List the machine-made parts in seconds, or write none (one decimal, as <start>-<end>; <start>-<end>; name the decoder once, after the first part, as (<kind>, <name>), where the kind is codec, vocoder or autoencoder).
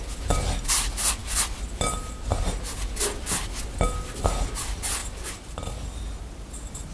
none